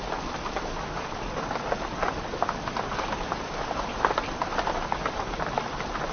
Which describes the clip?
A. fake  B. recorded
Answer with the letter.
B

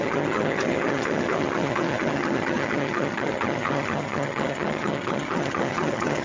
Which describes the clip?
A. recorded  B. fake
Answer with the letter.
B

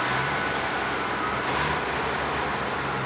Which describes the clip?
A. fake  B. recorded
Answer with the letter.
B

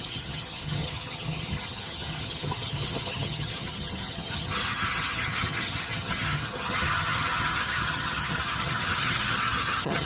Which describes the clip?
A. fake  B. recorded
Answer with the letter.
A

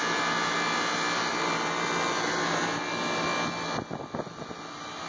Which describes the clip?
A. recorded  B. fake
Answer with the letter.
A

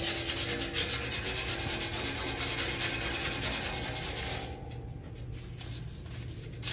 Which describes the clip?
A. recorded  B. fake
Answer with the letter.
A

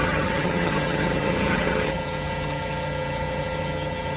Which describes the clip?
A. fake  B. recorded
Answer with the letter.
A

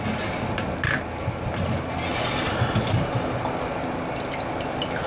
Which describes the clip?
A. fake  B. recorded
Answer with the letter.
B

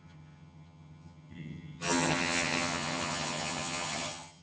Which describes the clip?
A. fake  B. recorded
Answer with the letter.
A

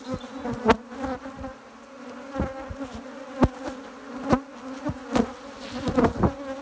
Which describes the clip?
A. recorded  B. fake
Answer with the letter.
A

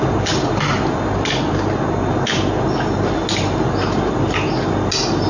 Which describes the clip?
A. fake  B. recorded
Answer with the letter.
B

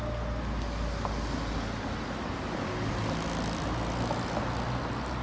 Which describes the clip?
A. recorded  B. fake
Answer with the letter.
A